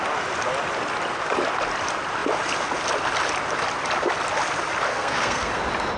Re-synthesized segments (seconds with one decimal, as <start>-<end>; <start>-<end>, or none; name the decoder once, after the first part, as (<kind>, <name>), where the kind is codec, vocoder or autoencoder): 4.9-5.6 (codec, SNAC)